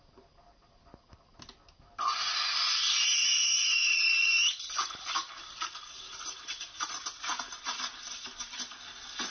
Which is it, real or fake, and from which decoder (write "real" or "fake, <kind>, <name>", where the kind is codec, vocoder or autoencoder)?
real